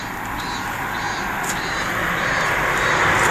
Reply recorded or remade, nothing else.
recorded